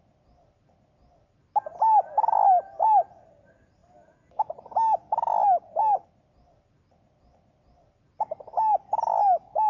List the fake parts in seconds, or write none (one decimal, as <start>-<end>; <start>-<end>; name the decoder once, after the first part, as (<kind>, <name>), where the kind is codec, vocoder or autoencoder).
none